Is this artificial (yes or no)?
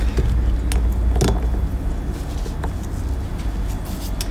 no